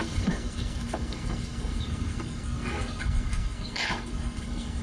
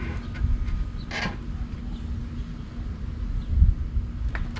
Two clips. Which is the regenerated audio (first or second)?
first